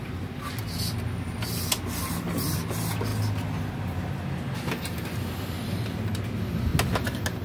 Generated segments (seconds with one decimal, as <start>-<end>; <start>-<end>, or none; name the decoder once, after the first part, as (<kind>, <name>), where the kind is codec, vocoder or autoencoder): none

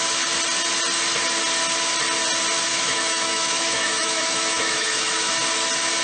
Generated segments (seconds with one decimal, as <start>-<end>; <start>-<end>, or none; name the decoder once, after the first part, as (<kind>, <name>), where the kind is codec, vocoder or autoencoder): 2.7-5.3 (autoencoder, DAC-VAE)

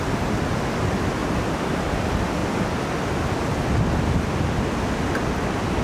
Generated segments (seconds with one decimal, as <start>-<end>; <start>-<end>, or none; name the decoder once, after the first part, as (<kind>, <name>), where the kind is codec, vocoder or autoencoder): 1.2-2.0 (vocoder, BigVGAN v2)

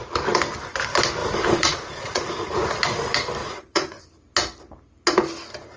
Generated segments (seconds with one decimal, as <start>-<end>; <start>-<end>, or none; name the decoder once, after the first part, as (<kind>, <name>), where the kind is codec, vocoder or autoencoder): 1.2-2.7 (vocoder, Vocos); 3.4-4.0

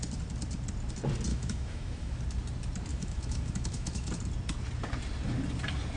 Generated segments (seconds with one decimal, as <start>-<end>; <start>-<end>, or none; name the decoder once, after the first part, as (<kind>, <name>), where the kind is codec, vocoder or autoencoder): 1.3-2.2 (autoencoder, DAC-VAE); 2.9-4.1